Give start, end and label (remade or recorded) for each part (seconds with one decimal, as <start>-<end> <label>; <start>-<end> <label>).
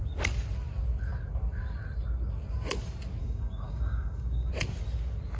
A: 0.0-3.2 recorded; 3.2-4.5 remade; 4.5-5.4 recorded